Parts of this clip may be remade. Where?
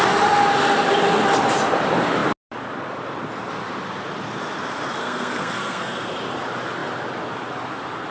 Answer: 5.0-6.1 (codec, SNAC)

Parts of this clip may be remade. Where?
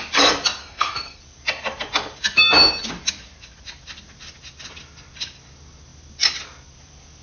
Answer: 0.6-1.2 (codec, SNAC)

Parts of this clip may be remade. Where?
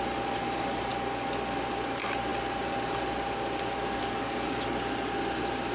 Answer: none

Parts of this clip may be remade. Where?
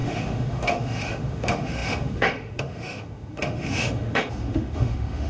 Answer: 0.0-5.3 (autoencoder, DAC-VAE)